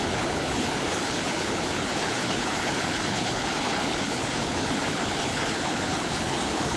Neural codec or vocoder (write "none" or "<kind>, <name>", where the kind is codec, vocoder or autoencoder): codec, HILCodec